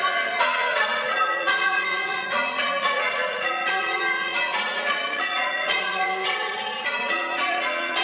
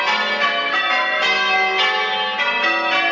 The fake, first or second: first